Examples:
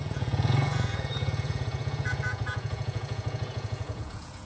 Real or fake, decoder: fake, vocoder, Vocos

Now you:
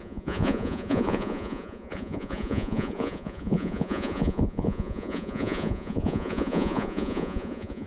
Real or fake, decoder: fake, vocoder, Vocos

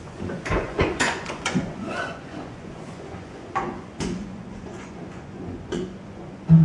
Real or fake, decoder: fake, vocoder, Vocos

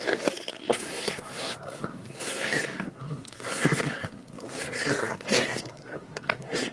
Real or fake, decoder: fake, codec, SNAC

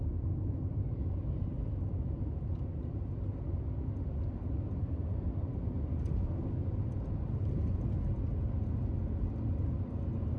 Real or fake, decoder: real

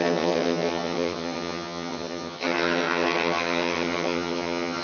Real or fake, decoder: fake, vocoder, HiFi-GAN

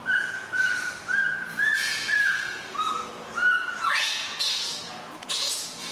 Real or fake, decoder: fake, vocoder, Vocos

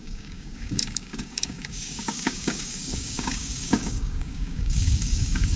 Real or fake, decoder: fake, codec, DAC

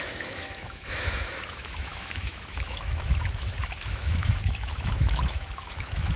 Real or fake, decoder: fake, autoencoder, DAC-VAE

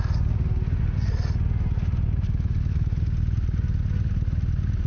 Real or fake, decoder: real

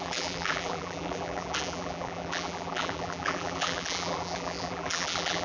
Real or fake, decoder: fake, vocoder, BigVGAN v2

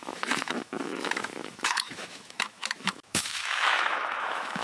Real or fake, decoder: fake, autoencoder, DAC-VAE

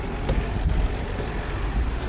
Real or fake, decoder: real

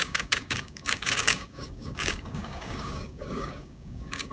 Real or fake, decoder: fake, codec, DAC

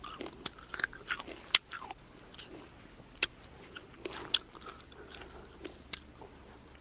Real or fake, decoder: real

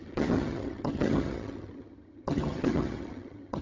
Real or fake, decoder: fake, vocoder, HiFi-GAN